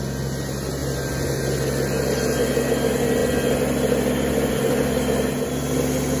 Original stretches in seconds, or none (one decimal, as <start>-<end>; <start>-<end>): 0.0-6.2